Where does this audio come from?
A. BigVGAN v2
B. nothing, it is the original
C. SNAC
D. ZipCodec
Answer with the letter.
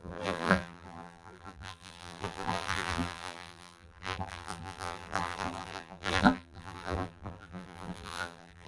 A